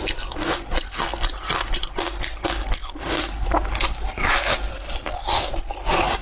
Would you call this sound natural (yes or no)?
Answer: yes